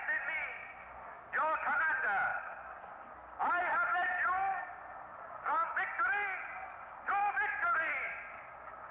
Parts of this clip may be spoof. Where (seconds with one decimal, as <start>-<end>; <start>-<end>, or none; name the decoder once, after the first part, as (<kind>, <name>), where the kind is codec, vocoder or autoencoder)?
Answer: none